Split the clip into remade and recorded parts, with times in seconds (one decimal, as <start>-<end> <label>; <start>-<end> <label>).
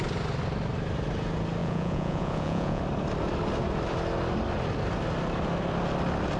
0.0-1.6 recorded; 1.6-2.8 remade; 2.8-6.4 recorded